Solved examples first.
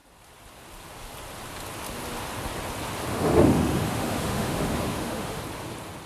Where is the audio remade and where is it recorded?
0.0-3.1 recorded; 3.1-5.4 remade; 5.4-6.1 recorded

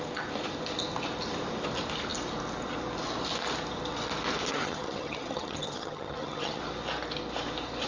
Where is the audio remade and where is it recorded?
0.0-4.5 recorded; 4.5-6.6 remade; 6.6-7.9 recorded

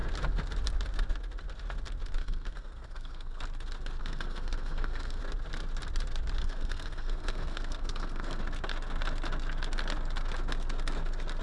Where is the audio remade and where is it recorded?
0.0-2.2 recorded; 2.2-3.4 remade; 3.4-4.0 recorded; 4.0-5.2 remade; 5.2-6.4 recorded; 6.4-8.4 remade; 8.4-11.4 recorded

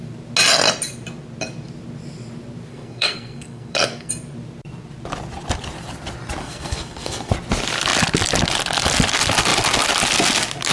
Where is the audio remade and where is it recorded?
0.0-2.7 recorded; 2.7-4.1 remade; 4.1-6.4 recorded; 6.4-7.3 remade; 7.3-10.7 recorded

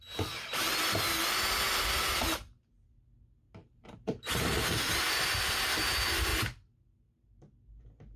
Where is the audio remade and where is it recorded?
0.0-3.6 recorded; 3.6-4.8 remade; 4.8-8.2 recorded

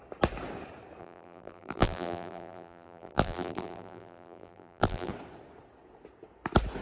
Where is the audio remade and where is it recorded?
0.0-1.0 recorded; 1.0-5.1 remade; 5.1-6.8 recorded